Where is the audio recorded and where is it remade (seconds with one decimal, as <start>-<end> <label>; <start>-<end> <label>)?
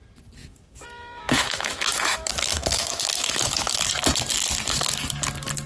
0.0-0.4 recorded; 0.4-3.8 remade; 3.8-5.7 recorded